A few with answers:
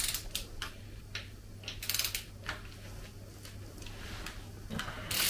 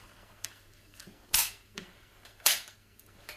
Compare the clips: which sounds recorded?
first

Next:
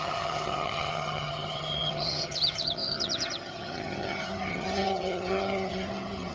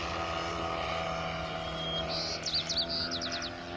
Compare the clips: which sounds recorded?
second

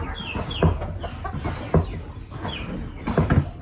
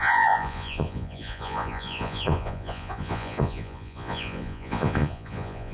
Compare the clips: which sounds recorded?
first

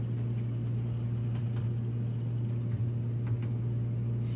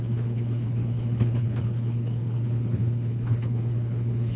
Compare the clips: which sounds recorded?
first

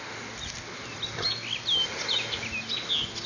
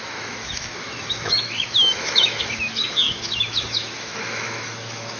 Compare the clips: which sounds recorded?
first